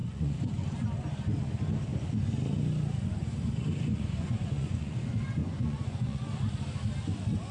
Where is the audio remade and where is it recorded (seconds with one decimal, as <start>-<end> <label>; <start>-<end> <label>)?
0.0-0.6 remade; 0.6-3.2 recorded; 3.2-5.0 remade; 5.0-5.4 recorded; 5.4-6.3 remade; 6.3-7.5 recorded